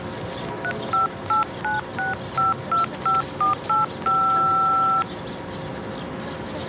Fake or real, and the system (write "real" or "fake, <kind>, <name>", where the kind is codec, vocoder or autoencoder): real